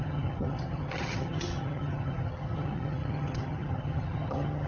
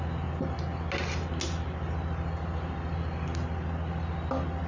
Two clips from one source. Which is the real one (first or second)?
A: second